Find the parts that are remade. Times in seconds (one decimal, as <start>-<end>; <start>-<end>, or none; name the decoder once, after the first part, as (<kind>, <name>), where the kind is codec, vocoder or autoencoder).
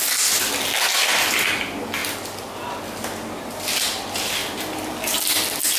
none